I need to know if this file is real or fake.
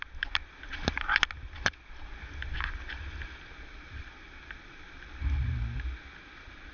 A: real